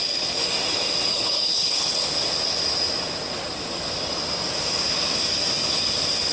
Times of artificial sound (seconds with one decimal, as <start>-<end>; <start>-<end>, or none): 1.1-2.1